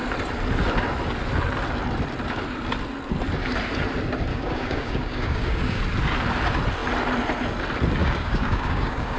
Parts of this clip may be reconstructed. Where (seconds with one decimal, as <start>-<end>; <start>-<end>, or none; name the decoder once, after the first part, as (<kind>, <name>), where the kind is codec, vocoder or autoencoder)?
4.3-5.8 (codec, DAC); 8.0-9.2

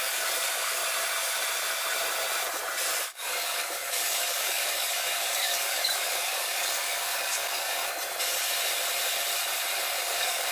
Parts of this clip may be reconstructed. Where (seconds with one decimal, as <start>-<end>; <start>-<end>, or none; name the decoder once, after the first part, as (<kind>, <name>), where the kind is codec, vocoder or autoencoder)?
0.0-0.8 (codec, DAC); 3.0-7.8; 10.0-10.5